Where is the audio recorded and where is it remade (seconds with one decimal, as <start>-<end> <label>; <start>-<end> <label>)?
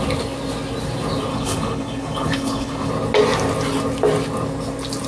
0.0-1.3 recorded; 1.3-2.9 remade; 2.9-5.1 recorded